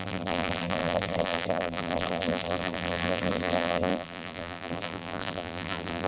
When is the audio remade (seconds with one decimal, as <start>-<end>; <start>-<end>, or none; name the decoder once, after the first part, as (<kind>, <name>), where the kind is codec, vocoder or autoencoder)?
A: 0.0-6.1 (vocoder, BigVGAN v2)